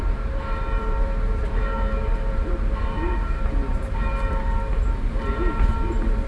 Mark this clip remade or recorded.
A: remade